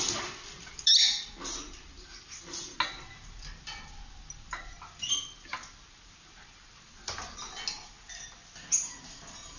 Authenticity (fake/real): real